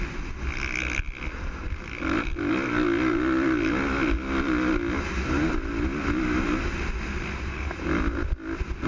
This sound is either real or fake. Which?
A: real